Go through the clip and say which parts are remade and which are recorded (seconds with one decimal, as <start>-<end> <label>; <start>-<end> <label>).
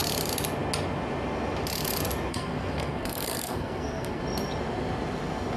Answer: 0.0-2.3 recorded; 2.3-4.2 remade; 4.2-5.6 recorded